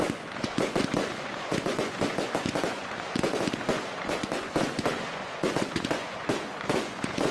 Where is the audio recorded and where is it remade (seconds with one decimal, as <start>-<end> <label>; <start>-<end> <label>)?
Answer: 0.0-7.3 remade